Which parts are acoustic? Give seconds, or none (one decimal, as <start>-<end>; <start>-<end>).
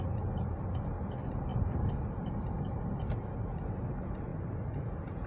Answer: 0.0-1.5; 3.0-4.3